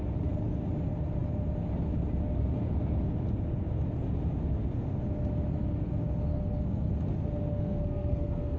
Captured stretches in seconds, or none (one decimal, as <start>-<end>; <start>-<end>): 0.0-6.3; 6.9-7.5